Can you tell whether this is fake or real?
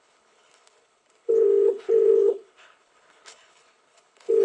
fake